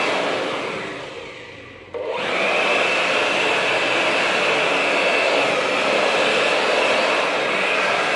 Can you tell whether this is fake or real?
real